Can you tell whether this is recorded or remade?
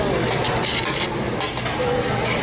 recorded